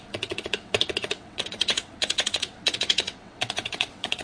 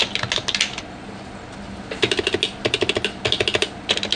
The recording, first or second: second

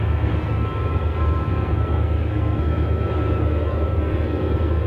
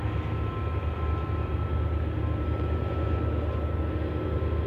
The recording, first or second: second